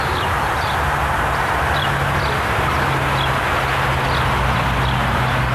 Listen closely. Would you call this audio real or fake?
real